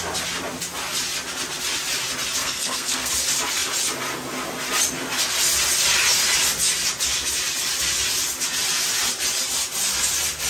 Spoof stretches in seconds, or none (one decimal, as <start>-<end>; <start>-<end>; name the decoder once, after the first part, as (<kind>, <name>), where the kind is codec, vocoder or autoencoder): 2.4-3.1 (codec, SNAC)